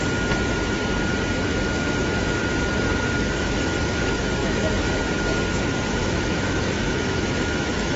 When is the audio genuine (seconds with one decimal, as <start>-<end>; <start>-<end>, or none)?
0.0-1.5; 2.4-4.4; 5.0-6.0